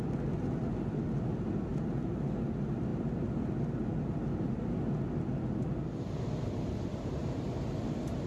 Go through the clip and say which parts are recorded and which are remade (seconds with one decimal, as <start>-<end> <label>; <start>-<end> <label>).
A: 0.0-8.3 recorded